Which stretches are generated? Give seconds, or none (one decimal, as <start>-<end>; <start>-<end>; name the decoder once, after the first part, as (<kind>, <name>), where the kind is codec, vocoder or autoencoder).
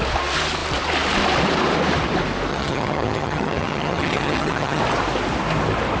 2.5-4.8 (vocoder, HiFi-GAN)